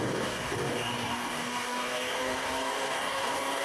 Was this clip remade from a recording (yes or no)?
yes